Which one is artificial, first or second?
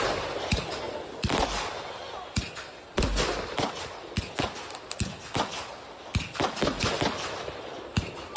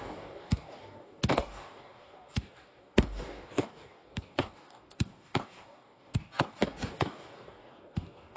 second